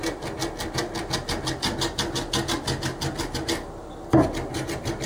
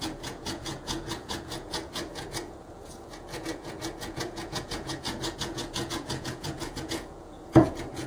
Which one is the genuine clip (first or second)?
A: first